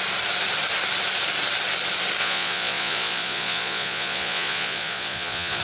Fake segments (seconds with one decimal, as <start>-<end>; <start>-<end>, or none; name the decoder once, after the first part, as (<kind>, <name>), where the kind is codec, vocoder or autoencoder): 2.2-5.6 (vocoder, Vocos)